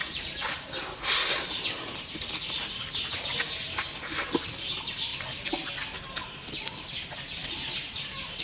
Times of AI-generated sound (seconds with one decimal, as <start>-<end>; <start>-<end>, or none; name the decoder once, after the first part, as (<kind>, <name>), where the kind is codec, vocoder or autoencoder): 7.4-8.4 (vocoder, BigVGAN v2)